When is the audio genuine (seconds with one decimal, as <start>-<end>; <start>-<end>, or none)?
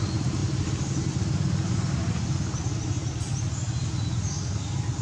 0.0-5.0